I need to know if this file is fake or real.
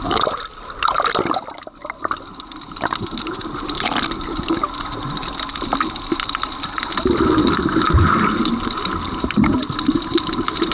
real